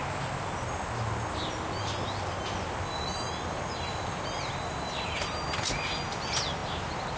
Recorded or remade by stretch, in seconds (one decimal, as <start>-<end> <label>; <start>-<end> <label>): 0.0-7.2 recorded